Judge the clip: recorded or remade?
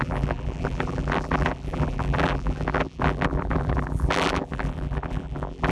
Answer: remade